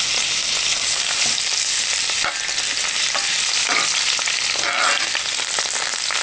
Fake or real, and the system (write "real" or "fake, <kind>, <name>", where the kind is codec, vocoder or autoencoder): real